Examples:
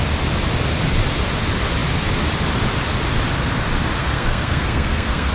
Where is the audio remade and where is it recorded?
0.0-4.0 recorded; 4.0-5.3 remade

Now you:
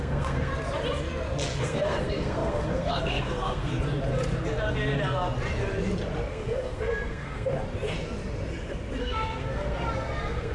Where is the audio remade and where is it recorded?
0.0-0.5 remade; 0.5-1.6 recorded; 1.6-3.7 remade; 3.7-6.3 recorded; 6.3-7.5 remade; 7.5-9.0 recorded; 9.0-10.5 remade

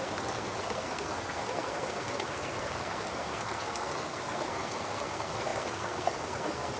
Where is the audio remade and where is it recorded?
0.0-6.8 remade